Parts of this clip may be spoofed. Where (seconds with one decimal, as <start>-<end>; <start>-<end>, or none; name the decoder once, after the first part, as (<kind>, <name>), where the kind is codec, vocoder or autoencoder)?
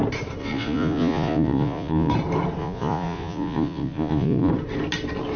0.4-2.1 (vocoder, Vocos); 2.6-4.5